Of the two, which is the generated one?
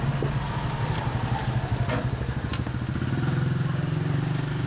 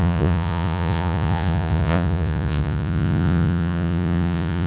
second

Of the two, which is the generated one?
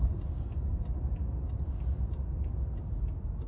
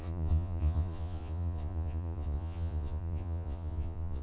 second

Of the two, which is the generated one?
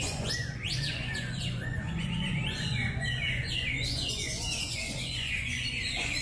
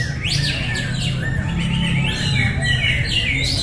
first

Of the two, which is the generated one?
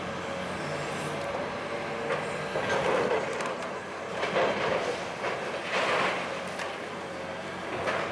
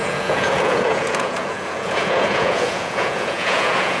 second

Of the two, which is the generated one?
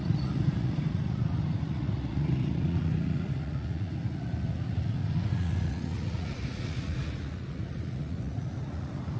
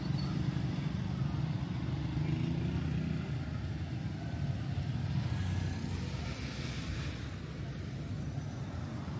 first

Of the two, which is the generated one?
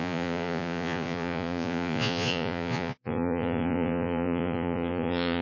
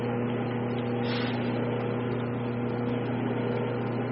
first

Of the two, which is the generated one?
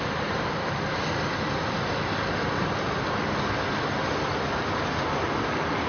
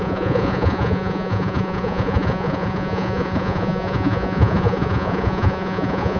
second